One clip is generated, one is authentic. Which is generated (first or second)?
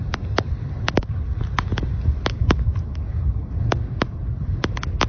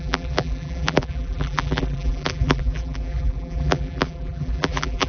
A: second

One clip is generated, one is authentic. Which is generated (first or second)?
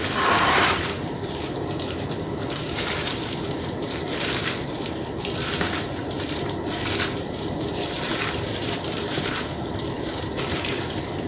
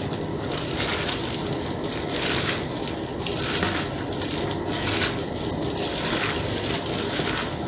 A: first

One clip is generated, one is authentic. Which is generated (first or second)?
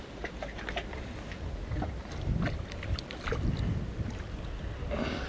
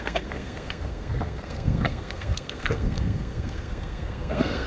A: second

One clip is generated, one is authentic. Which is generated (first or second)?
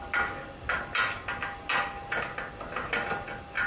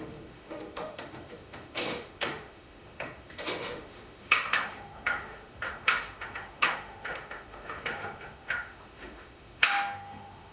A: second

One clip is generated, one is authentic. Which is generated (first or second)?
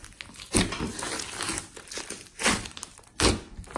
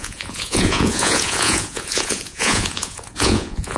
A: second